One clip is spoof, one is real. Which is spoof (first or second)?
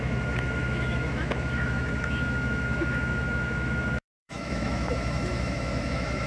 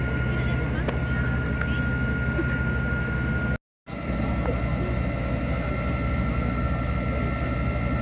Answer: first